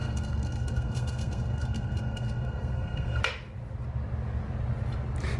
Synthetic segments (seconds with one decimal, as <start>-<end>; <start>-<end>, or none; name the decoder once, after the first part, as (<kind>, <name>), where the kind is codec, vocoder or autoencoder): 0.0-3.2 (codec, SNAC)